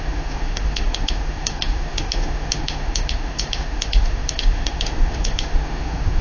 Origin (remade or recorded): remade